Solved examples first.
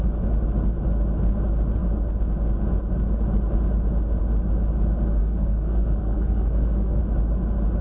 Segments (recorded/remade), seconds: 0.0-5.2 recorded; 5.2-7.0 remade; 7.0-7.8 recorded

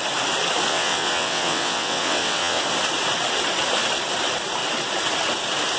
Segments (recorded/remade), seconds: 0.0-0.7 recorded; 0.7-2.6 remade; 2.6-5.8 recorded

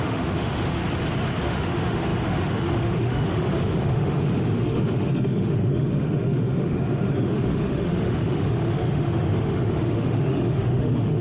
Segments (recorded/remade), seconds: 0.0-0.8 remade; 0.8-1.4 recorded; 1.4-11.2 remade